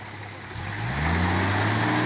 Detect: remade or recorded recorded